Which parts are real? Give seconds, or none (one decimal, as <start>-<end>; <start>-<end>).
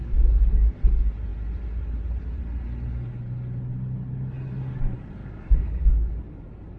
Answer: 0.7-5.2; 6.2-6.8